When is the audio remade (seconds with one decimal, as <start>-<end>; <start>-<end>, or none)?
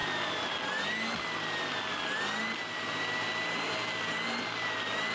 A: none